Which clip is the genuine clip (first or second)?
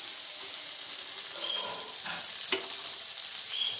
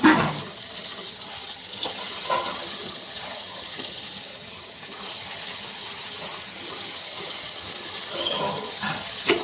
first